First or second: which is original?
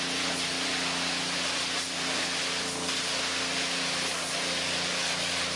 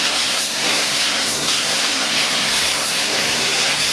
first